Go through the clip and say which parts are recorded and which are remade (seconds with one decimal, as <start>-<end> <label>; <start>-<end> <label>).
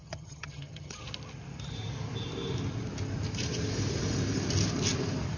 0.0-1.0 remade; 1.0-5.4 recorded